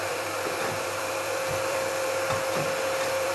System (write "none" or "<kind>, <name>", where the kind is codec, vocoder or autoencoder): vocoder, BigVGAN v2